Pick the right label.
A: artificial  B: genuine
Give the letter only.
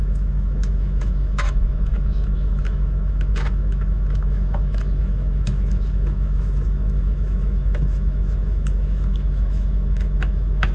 A